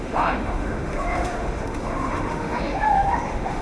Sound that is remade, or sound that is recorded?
remade